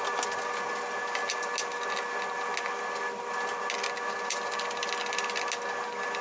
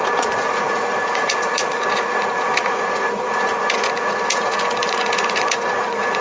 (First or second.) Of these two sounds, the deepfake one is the second